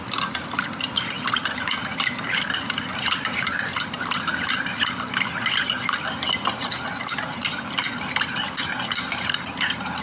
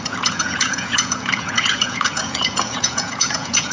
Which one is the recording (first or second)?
first